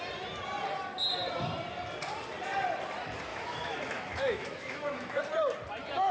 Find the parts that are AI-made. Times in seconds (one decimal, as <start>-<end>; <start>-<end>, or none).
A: 3.3-5.2